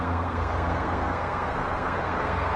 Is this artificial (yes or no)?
yes